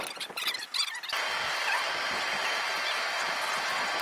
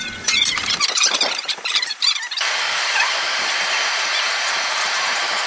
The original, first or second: first